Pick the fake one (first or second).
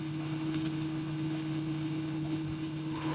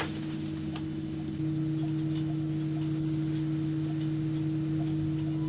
first